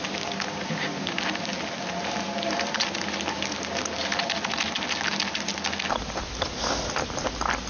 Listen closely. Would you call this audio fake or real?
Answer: real